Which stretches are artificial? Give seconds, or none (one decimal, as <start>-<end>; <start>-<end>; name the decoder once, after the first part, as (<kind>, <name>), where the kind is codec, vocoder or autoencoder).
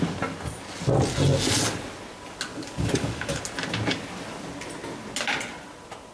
2.5-3.4 (codec, DAC)